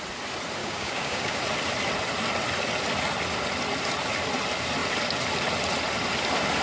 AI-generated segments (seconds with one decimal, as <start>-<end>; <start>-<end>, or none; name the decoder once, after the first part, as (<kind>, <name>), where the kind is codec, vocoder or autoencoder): 0.6-1.4 (codec, DAC)